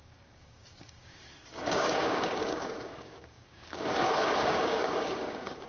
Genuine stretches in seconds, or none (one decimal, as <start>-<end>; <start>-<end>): none